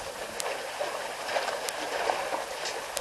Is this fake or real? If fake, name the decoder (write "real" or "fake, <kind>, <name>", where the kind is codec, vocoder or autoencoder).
real